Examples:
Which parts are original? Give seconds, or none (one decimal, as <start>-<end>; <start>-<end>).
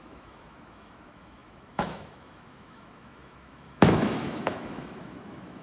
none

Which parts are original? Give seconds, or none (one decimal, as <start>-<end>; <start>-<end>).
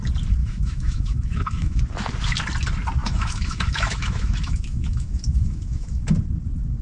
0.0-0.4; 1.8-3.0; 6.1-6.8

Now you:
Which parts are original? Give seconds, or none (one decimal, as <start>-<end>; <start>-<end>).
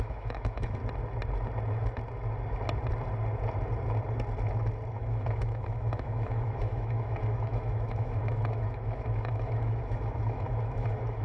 0.8-4.9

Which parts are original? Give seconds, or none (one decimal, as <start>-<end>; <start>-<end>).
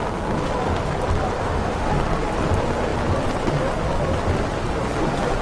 0.0-1.4; 1.9-5.4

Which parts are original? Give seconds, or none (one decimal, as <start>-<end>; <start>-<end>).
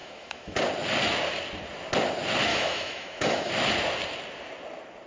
0.6-2.5; 3.5-5.1